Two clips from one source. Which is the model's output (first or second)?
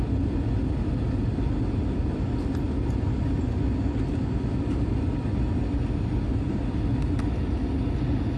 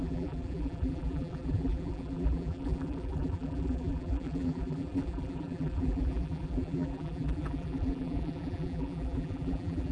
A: second